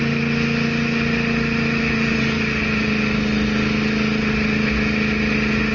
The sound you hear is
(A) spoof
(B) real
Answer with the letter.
B